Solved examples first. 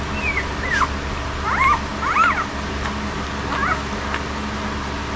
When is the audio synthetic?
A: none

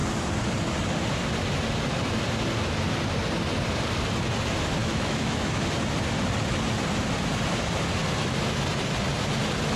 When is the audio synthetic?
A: 4.8-5.6 (autoencoder, DAC-VAE)